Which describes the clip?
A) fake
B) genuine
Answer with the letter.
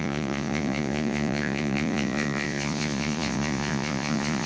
A